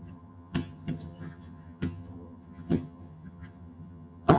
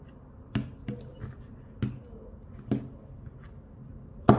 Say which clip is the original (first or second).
second